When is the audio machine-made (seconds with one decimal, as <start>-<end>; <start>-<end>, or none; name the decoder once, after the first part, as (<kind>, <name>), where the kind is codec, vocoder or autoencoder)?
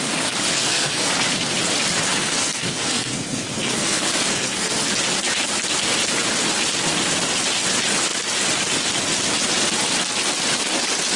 0.5-1.1 (codec, SNAC); 2.1-4.9